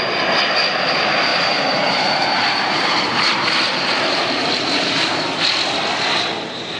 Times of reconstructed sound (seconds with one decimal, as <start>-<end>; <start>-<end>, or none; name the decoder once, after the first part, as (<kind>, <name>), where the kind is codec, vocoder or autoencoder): 1.3-5.4 (vocoder, BigVGAN v2)